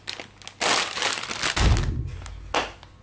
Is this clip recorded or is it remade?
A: recorded